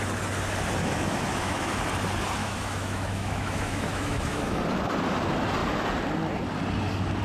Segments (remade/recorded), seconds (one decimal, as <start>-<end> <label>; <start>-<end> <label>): 0.0-0.8 recorded; 0.8-1.8 remade; 1.8-2.4 recorded; 2.4-4.6 remade; 4.6-7.2 recorded